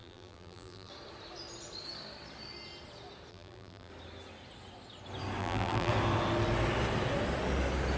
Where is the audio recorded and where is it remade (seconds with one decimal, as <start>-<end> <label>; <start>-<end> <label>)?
0.0-0.9 remade; 0.9-3.3 recorded; 3.3-3.9 remade; 3.9-5.4 recorded; 5.4-5.9 remade; 5.9-8.0 recorded